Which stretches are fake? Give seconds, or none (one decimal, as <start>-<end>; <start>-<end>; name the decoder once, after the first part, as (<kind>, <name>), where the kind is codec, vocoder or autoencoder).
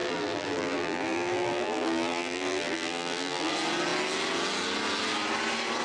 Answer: 0.0-3.5 (vocoder, BigVGAN v2)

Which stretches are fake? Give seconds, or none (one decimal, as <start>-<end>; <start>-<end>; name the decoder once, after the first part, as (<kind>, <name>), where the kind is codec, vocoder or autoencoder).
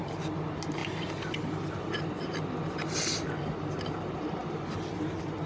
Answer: none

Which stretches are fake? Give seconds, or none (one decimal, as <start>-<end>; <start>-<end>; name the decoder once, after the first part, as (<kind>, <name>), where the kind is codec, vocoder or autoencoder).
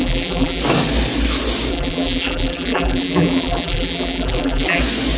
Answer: 0.0-0.6 (vocoder, BigVGAN v2); 1.7-4.8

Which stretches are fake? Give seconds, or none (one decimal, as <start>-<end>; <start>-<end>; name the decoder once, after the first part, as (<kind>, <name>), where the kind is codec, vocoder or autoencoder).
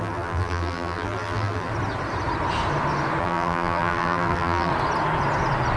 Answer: 0.0-1.7 (vocoder, BigVGAN v2); 3.2-4.7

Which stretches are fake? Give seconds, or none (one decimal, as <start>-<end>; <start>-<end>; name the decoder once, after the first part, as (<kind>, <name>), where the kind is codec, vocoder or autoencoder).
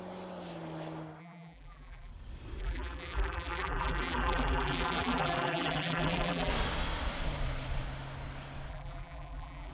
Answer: 1.2-2.1 (vocoder, BigVGAN v2); 2.6-6.5; 8.7-9.7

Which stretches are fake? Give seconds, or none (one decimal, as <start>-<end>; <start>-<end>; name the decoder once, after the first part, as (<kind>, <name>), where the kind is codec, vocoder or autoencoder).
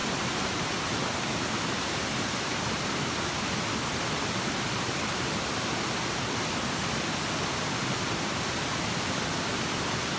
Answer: 0.0-0.7 (vocoder, BigVGAN v2)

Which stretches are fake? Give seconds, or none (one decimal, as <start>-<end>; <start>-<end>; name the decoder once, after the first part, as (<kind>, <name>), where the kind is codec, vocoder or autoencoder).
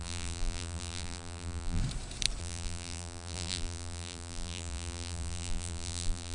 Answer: 0.0-1.8 (vocoder, BigVGAN v2); 2.4-6.3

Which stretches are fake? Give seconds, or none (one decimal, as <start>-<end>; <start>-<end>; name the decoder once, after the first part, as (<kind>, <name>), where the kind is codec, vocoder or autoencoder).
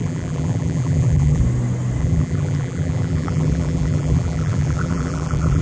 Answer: 0.0-1.4 (vocoder, BigVGAN v2); 2.0-5.6